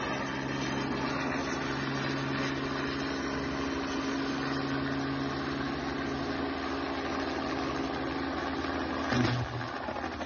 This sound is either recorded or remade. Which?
recorded